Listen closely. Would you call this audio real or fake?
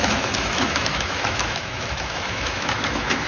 fake